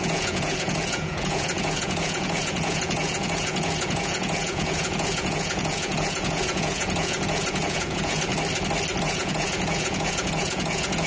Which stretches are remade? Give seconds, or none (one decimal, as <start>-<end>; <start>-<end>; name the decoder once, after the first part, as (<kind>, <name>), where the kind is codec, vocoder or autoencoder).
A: 0.0-8.3 (vocoder, Vocos); 9.0-11.1